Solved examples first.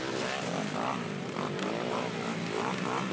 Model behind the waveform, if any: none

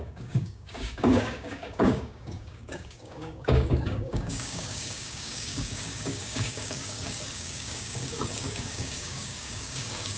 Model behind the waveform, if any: codec, DAC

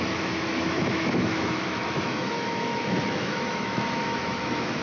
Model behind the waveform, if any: autoencoder, DAC-VAE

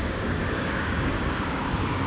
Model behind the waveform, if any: codec, DAC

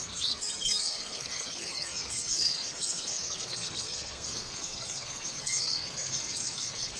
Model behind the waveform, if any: codec, SNAC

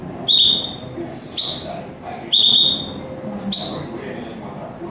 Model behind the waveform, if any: none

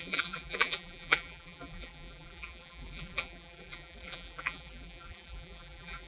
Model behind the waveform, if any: vocoder, BigVGAN v2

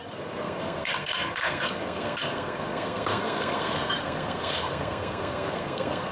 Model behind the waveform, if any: codec, SNAC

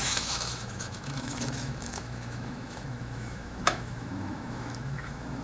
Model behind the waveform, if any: autoencoder, DAC-VAE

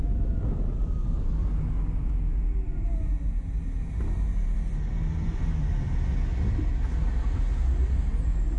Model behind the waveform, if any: none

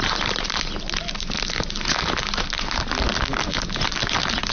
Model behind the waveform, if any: none